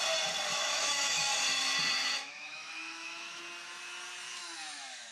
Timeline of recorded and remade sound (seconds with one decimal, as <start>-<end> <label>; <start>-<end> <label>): 0.0-0.5 recorded; 0.5-1.2 remade; 1.2-2.0 recorded; 2.0-3.4 remade; 3.4-4.4 recorded; 4.4-5.1 remade